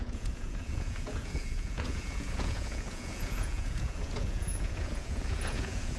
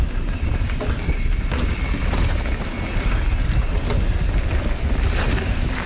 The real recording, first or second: second